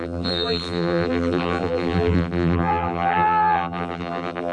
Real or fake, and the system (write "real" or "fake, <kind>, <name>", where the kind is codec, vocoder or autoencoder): fake, vocoder, BigVGAN v2